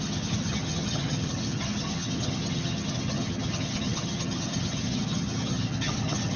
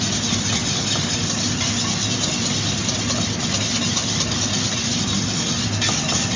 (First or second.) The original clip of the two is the second